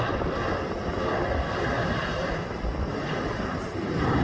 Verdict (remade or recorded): recorded